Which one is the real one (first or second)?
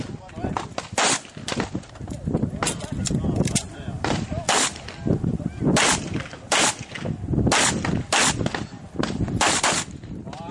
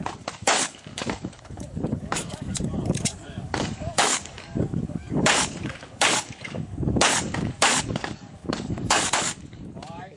first